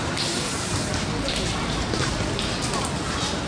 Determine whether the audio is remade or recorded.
recorded